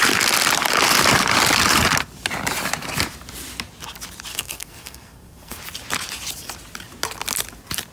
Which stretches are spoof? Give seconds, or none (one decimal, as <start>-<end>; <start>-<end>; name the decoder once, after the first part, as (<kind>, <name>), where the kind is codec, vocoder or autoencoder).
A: 4.3-5.6 (codec, SNAC)